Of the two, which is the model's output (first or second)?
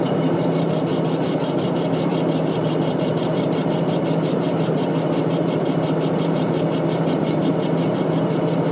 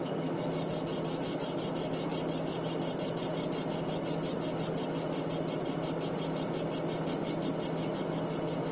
first